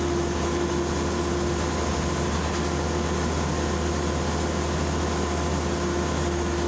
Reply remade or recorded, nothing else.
recorded